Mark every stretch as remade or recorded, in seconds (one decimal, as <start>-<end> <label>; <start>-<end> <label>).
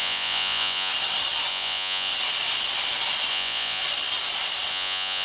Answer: 0.0-0.9 remade; 0.9-1.5 recorded; 1.5-2.1 remade; 2.1-3.3 recorded; 3.3-3.8 remade; 3.8-4.7 recorded; 4.7-5.2 remade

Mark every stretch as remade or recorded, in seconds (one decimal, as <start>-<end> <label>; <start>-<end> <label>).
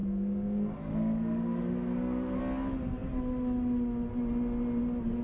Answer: 0.0-2.4 remade; 2.4-5.2 recorded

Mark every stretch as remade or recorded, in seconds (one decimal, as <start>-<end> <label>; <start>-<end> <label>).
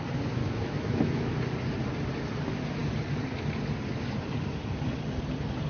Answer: 0.0-0.4 recorded; 0.4-1.3 remade; 1.3-5.7 recorded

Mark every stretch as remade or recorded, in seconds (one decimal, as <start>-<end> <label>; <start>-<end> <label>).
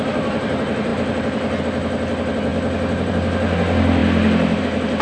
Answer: 0.0-5.0 recorded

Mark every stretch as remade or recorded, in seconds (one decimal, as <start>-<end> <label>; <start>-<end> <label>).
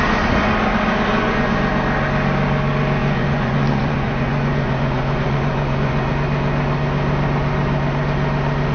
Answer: 0.0-1.1 recorded; 1.1-1.6 remade; 1.6-3.0 recorded; 3.0-6.1 remade; 6.1-8.7 recorded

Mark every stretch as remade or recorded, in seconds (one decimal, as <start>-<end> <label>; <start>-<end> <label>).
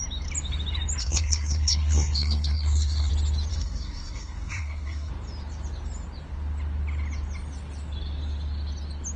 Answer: 0.0-1.0 recorded; 1.0-3.1 remade; 3.1-3.5 recorded; 3.5-5.1 remade; 5.1-9.2 recorded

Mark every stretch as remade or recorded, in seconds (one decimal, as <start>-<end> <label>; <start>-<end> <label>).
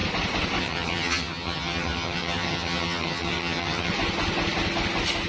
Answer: 0.0-0.6 recorded; 0.6-3.9 remade; 3.9-5.3 recorded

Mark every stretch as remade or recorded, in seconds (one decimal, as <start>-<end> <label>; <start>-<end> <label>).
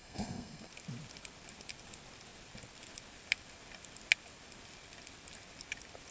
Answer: 0.0-0.7 remade; 0.7-6.1 recorded